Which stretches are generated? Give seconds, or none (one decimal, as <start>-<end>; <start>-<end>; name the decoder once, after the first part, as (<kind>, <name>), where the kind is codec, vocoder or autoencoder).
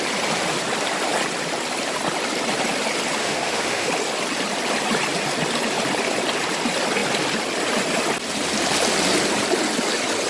3.2-3.9 (autoencoder, DAC-VAE)